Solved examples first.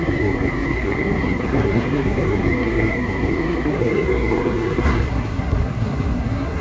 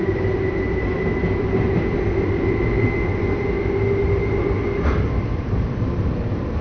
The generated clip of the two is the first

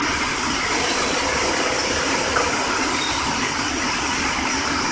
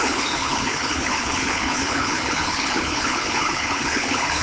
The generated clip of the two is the second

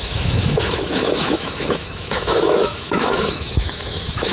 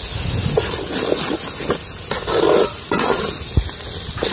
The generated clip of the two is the first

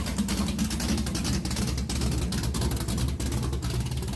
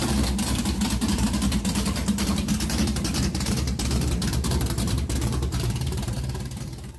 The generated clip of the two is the second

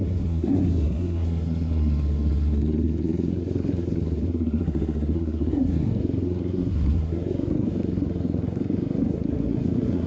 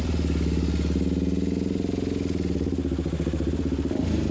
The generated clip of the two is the first